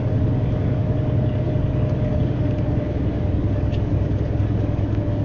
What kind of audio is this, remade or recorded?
remade